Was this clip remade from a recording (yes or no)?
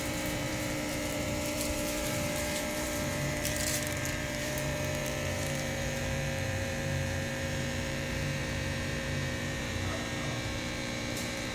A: yes